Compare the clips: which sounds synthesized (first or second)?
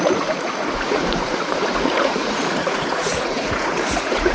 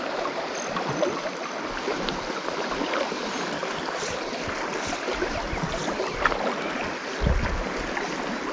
first